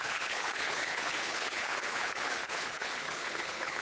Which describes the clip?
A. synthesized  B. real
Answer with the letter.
A